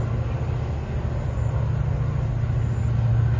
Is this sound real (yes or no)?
yes